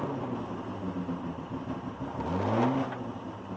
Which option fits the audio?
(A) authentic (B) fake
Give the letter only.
A